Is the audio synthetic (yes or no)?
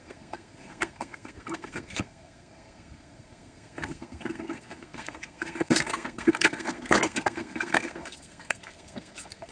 yes